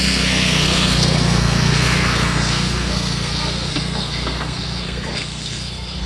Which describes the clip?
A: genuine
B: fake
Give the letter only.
B